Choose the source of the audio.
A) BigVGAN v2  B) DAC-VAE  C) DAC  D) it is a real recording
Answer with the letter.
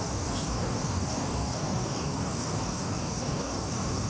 C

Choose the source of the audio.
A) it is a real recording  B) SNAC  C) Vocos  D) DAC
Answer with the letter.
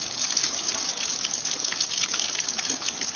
D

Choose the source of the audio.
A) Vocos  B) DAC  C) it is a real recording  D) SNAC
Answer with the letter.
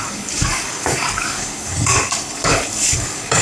B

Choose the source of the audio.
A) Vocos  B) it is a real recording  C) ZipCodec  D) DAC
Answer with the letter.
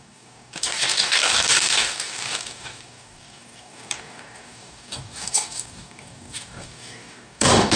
D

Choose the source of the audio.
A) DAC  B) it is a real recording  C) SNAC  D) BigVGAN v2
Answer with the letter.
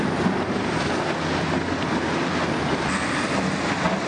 B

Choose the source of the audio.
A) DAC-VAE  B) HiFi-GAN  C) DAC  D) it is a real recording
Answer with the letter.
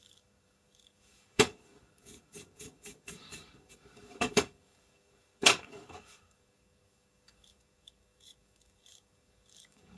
C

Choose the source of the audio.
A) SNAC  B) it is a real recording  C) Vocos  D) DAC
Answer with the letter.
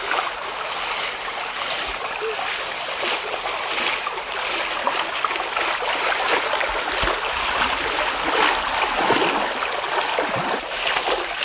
B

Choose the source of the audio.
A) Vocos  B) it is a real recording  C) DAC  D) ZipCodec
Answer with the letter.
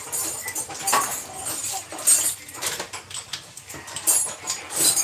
B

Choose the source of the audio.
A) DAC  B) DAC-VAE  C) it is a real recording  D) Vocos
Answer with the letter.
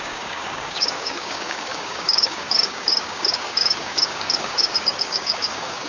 A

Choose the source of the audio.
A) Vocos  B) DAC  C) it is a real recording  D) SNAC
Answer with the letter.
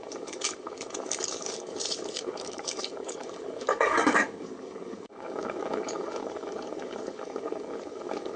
B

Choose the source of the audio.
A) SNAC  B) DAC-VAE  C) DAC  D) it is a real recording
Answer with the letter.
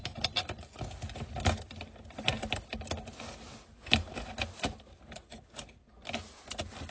D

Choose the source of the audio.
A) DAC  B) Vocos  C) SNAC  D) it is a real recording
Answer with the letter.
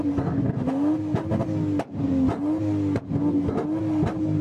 D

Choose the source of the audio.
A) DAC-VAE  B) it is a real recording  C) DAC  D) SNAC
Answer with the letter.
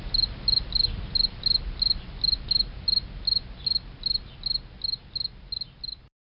B